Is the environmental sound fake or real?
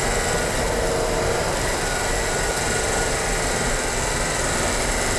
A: real